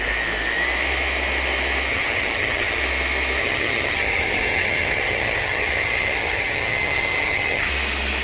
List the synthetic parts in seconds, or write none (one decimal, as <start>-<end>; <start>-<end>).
1.9-2.8; 3.4-7.7